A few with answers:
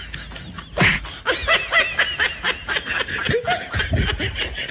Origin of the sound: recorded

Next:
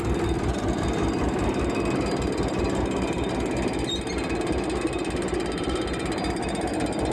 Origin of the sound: recorded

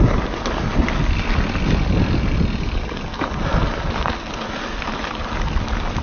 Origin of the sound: recorded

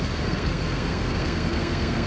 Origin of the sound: remade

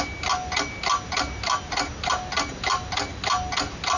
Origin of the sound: recorded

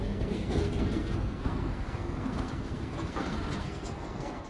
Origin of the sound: remade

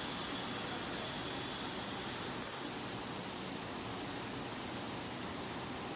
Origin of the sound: recorded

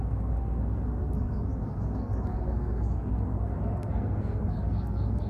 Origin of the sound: remade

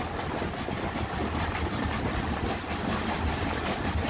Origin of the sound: recorded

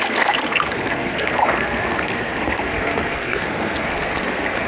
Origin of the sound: remade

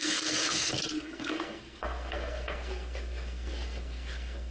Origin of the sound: remade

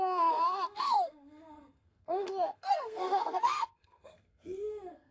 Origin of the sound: remade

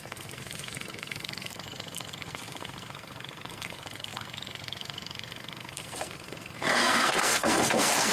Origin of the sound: remade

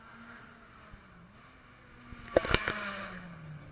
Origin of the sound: recorded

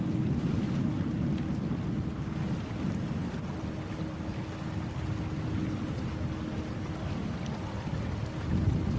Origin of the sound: recorded